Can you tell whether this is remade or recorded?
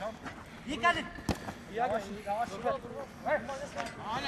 recorded